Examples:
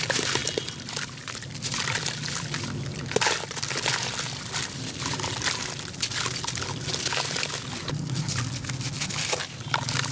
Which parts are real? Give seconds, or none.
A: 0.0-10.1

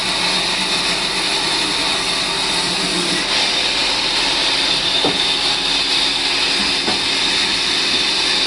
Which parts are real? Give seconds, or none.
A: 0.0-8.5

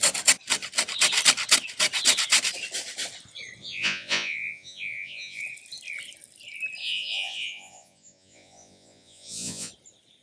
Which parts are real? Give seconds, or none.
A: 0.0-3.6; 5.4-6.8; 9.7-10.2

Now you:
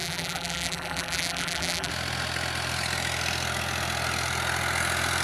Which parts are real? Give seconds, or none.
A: 1.9-5.2

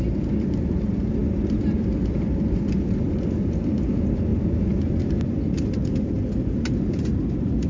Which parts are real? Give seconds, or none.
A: 0.0-7.7